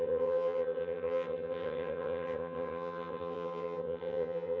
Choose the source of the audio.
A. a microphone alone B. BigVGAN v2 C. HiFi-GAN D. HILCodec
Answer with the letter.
C